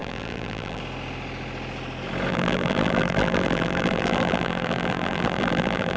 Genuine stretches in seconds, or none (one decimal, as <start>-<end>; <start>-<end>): 0.8-2.3